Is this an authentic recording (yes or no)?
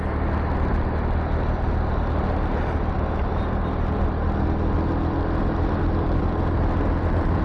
yes